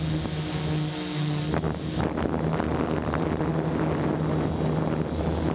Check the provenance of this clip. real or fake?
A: real